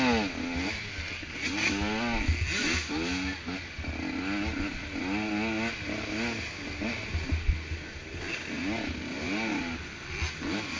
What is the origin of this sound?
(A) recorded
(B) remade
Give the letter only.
A